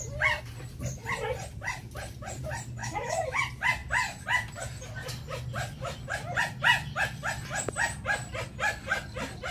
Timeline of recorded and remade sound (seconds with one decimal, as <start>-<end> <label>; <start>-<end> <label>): 0.0-2.8 recorded; 2.8-3.4 remade; 3.4-9.5 recorded